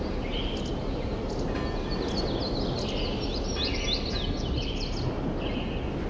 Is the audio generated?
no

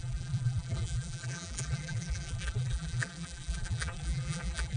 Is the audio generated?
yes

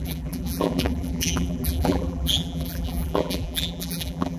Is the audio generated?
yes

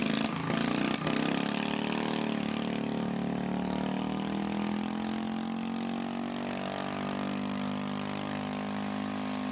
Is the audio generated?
no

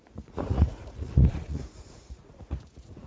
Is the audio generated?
yes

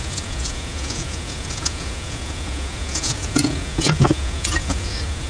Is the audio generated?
yes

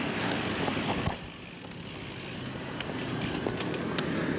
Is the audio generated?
no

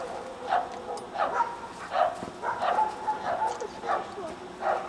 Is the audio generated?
no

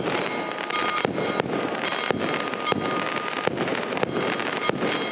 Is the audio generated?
no